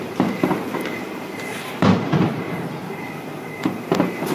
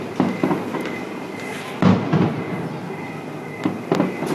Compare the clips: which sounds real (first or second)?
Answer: second